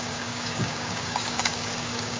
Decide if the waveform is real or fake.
fake